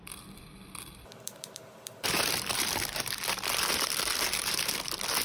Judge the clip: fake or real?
fake